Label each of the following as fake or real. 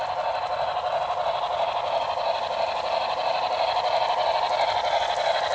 real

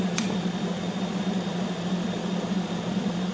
fake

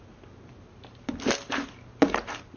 real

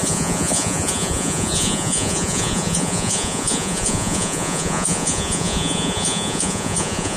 fake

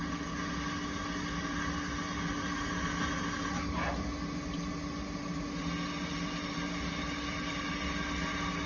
real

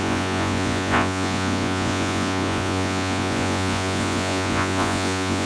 fake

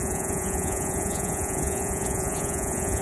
fake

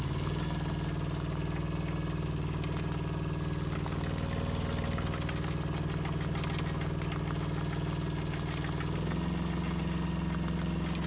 real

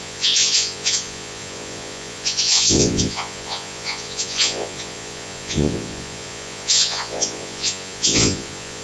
fake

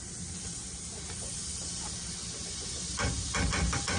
real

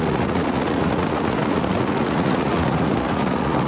fake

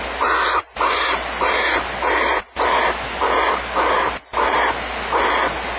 real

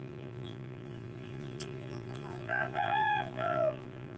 fake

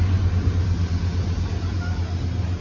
real